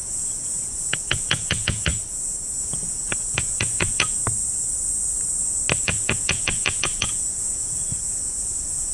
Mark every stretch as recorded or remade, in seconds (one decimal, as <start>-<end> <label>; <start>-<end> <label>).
0.0-1.9 remade; 1.9-2.6 recorded; 2.6-4.2 remade; 4.2-5.8 recorded; 5.8-8.9 remade